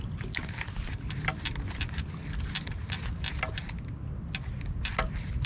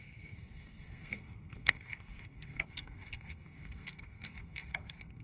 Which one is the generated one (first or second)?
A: second